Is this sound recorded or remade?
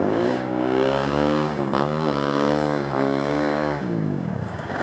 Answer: remade